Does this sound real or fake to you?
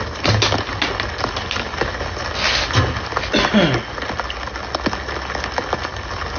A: real